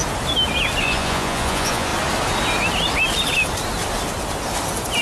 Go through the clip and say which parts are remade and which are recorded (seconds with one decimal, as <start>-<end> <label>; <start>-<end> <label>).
0.0-0.8 recorded; 0.8-1.9 remade; 1.9-5.0 recorded